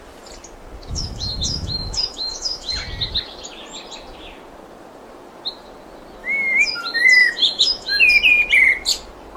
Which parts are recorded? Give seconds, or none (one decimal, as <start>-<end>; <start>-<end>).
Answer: 0.0-0.9; 2.7-6.2; 6.8-7.2; 8.1-9.4